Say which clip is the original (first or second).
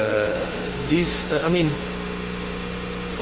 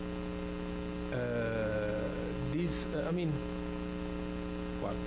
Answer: second